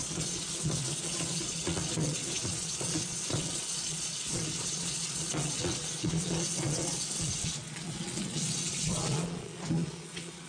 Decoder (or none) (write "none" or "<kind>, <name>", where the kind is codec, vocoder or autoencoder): vocoder, Vocos